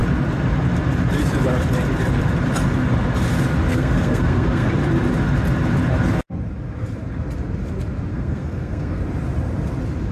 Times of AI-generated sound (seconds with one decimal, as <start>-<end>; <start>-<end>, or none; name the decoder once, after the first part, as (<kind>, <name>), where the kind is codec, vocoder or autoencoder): 3.7-4.7 (codec, SNAC); 8.1-9.0

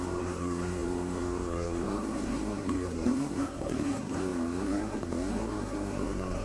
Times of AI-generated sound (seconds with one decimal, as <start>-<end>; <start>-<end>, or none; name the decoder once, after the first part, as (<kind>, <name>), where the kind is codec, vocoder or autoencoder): 0.0-6.4 (codec, SNAC)

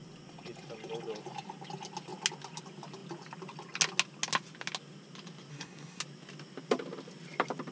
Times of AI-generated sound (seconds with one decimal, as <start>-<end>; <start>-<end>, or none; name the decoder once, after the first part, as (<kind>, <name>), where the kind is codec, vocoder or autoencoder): 5.5-6.0 (codec, SNAC)

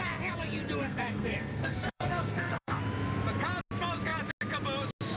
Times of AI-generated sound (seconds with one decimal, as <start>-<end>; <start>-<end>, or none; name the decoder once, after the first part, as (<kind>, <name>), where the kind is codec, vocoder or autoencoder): 0.8-2.8 (codec, SNAC)